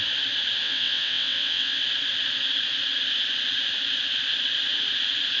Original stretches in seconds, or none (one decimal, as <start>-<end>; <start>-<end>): 0.0-0.6; 1.8-5.4